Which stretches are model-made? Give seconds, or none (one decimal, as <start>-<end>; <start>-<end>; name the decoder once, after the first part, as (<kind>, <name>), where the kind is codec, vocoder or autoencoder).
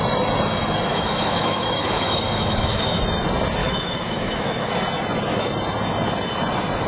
0.9-3.0 (autoencoder, DAC-VAE); 3.6-4.7